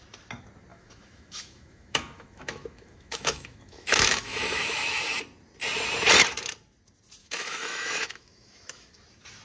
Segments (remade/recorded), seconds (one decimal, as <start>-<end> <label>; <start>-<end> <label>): 0.0-0.7 recorded; 0.7-5.0 remade; 5.0-7.2 recorded; 7.2-8.9 remade; 8.9-9.4 recorded